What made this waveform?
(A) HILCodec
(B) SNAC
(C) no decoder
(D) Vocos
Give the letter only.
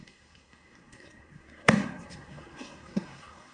B